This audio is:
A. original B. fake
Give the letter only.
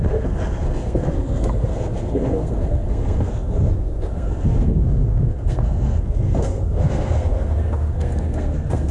B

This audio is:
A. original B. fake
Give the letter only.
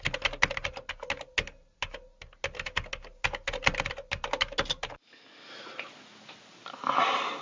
A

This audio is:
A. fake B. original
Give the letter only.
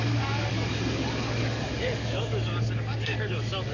A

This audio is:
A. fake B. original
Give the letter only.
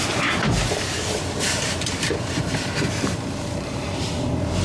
A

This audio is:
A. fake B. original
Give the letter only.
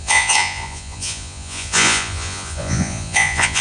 A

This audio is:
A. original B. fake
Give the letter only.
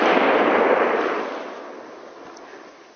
A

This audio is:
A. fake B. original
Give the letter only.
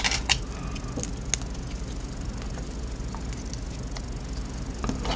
B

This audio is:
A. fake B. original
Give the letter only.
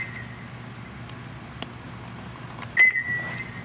B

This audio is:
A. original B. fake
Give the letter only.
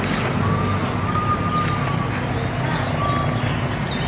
A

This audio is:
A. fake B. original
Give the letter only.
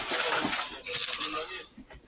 B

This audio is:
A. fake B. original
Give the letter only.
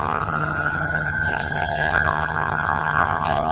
A